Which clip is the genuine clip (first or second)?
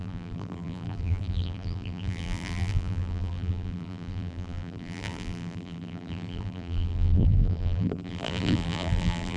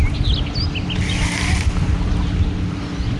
second